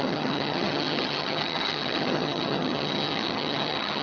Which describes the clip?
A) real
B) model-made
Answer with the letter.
B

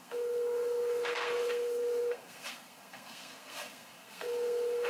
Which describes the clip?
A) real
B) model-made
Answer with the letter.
B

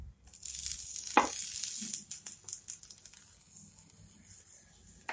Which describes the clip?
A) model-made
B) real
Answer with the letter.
B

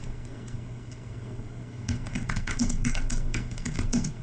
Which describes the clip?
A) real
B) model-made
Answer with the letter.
B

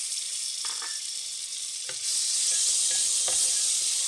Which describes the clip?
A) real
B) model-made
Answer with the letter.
A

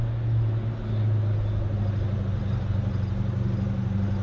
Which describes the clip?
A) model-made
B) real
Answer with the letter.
B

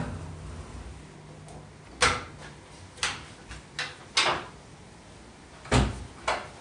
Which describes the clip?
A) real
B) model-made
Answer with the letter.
A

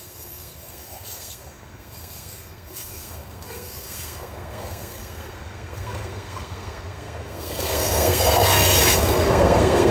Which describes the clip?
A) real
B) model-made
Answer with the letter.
B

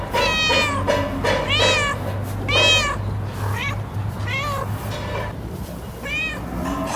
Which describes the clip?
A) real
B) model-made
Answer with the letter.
A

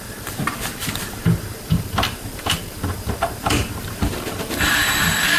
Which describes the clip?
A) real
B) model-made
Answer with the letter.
B